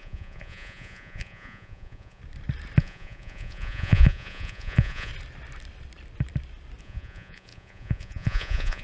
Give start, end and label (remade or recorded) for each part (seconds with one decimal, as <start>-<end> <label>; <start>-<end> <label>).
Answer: 0.0-2.2 remade; 2.2-2.8 recorded; 2.8-5.1 remade; 5.1-6.8 recorded; 6.8-8.8 remade